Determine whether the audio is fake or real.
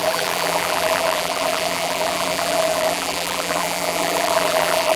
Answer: fake